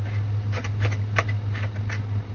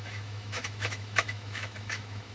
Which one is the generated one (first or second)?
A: second